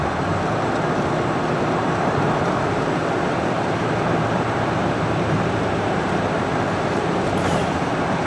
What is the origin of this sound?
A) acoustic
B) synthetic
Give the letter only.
B